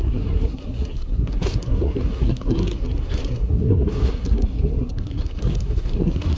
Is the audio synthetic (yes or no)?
yes